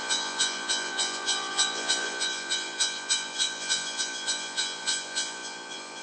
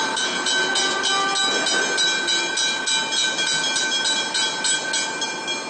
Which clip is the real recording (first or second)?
second